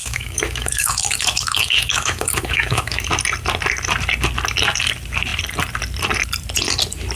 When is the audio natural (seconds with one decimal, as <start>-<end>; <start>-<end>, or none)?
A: 3.1-7.2